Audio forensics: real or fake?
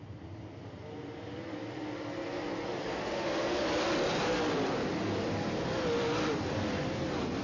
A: real